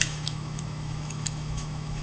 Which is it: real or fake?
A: fake